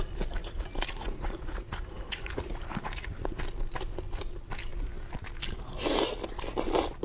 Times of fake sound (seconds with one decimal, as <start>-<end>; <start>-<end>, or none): 0.4-3.4